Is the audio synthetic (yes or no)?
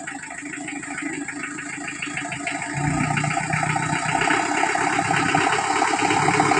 no